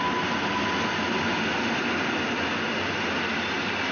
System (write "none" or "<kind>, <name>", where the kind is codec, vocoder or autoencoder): none